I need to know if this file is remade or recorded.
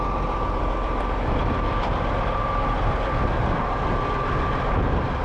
recorded